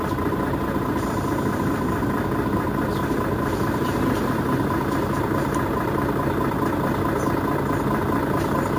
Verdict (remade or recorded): remade